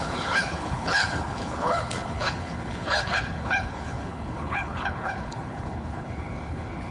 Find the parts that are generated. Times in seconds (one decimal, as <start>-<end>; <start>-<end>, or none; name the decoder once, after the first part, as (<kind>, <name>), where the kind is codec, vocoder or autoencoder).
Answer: 0.0-6.9 (codec, HILCodec)